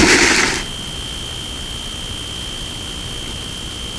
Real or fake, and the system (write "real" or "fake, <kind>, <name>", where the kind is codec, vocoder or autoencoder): real